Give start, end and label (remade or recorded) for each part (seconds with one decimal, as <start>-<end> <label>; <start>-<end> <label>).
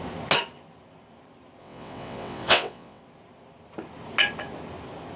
0.0-1.6 recorded; 1.6-3.0 remade; 3.0-5.2 recorded